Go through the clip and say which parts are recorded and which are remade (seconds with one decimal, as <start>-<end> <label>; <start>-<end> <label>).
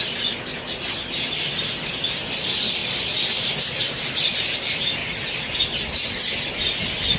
0.0-7.2 recorded